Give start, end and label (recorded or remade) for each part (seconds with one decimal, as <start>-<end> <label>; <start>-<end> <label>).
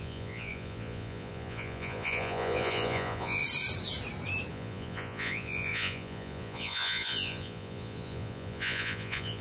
0.0-3.4 remade; 3.4-4.5 recorded; 4.5-9.4 remade